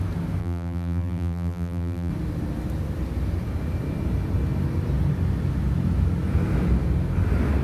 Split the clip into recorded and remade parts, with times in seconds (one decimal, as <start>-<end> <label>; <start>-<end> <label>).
0.0-0.4 recorded; 0.4-2.1 remade; 2.1-7.6 recorded